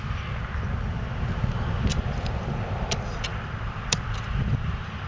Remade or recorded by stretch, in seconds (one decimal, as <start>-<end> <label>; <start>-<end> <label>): 0.0-1.9 recorded; 1.9-5.1 remade